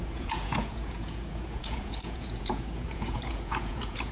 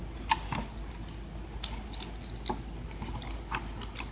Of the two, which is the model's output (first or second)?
first